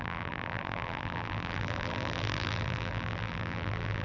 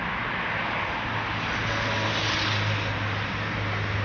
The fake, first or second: first